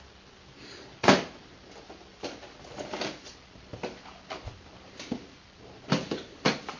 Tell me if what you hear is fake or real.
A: real